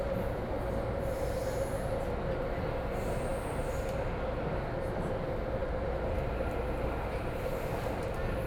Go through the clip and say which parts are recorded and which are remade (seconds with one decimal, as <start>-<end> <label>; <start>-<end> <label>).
0.0-8.5 recorded